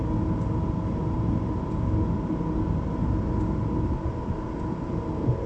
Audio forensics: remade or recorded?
recorded